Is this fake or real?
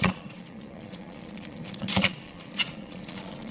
fake